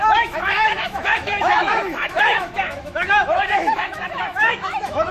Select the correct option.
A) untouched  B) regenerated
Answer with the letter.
B